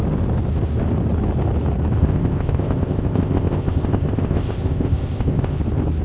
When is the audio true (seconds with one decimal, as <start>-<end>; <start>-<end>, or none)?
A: 0.0-2.0; 5.6-6.0